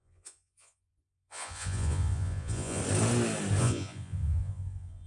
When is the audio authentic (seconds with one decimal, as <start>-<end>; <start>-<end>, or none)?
2.8-3.6